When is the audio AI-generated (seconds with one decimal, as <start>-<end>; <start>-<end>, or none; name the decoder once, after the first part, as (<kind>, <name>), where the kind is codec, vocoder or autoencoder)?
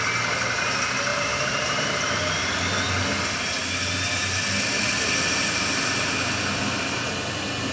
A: 1.1-2.4 (vocoder, BigVGAN v2)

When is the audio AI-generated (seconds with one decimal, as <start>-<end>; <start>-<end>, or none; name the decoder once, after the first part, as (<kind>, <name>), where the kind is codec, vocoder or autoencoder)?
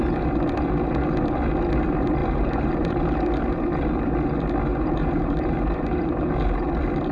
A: 2.2-3.0 (vocoder, BigVGAN v2); 4.7-6.3